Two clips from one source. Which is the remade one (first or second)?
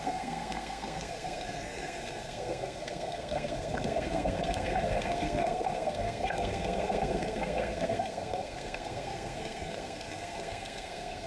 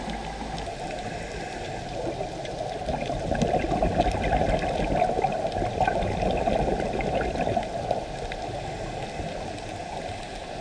first